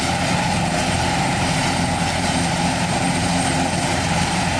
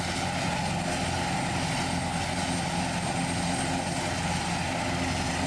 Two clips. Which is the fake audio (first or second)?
first